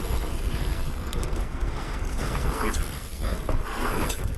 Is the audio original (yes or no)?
no